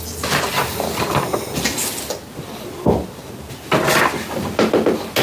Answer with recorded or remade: recorded